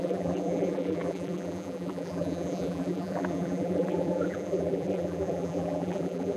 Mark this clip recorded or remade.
remade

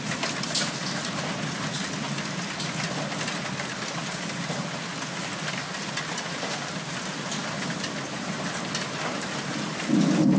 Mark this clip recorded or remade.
recorded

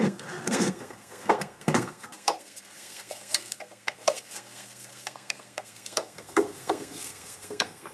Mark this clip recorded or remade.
remade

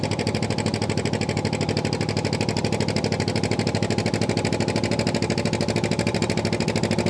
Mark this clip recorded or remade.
recorded